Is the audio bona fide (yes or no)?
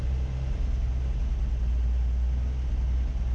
yes